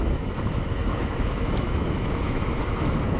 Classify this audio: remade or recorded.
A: remade